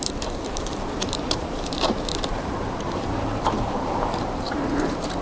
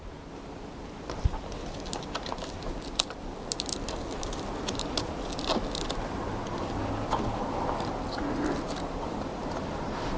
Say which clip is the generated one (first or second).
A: first